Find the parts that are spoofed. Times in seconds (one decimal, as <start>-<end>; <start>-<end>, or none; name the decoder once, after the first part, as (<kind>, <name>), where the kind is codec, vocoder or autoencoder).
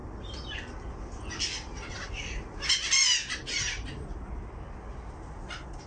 none